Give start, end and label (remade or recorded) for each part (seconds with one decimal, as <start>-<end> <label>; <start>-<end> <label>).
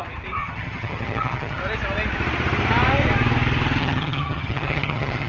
0.0-0.4 recorded; 0.4-1.6 remade; 1.6-3.8 recorded; 3.8-5.3 remade